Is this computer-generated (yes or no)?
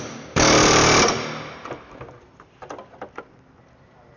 no